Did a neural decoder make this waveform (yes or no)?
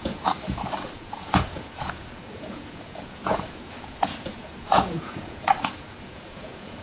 yes